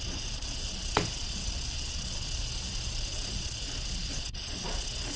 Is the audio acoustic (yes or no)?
no